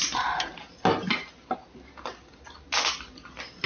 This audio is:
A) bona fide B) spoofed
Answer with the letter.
A